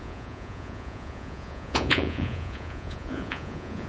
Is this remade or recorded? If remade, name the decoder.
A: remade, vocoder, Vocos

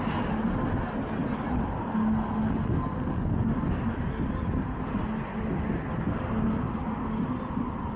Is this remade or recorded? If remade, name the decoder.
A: recorded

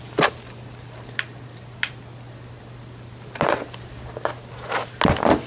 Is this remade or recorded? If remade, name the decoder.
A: recorded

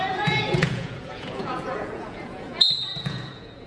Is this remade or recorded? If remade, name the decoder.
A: remade, vocoder, Vocos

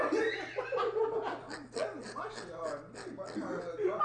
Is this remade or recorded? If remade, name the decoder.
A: recorded